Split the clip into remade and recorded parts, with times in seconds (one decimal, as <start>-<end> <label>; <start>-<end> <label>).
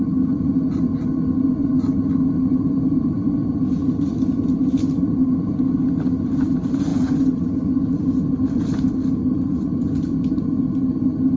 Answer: 0.0-11.4 recorded